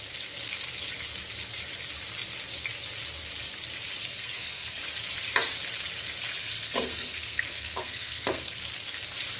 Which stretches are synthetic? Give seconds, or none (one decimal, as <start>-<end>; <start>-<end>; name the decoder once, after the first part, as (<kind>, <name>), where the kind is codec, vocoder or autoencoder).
4.0-4.8 (codec, SNAC); 6.4-8.6